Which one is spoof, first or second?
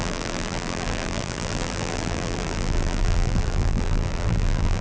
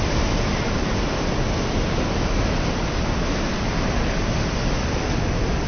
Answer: first